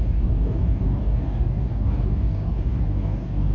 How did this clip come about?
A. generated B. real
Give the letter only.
A